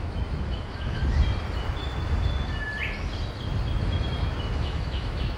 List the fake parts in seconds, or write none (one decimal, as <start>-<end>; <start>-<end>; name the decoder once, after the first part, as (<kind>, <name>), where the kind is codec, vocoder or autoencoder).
0.0-1.0 (autoencoder, DAC-VAE); 3.9-5.4